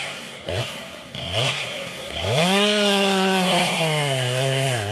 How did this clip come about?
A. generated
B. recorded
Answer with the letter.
A